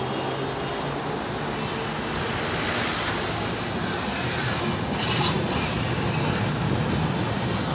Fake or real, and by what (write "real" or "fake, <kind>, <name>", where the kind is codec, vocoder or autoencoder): real